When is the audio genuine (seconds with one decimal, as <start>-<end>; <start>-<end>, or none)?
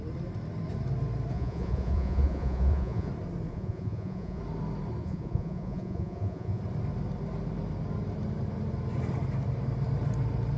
0.0-1.3; 3.1-3.5; 4.4-5.0; 6.6-10.6